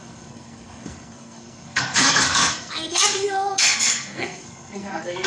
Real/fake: fake